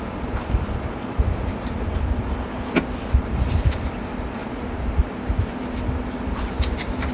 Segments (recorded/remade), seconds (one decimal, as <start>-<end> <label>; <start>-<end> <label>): 0.0-1.5 remade; 1.5-3.1 recorded; 3.1-4.4 remade; 4.4-6.2 recorded; 6.2-7.1 remade